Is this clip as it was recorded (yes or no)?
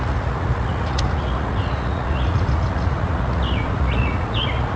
no